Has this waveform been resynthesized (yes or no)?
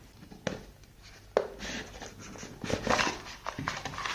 no